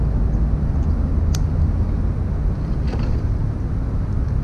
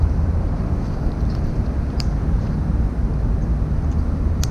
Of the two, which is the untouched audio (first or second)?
first